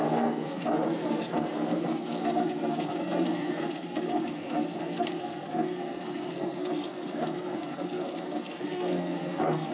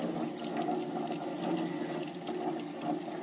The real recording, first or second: second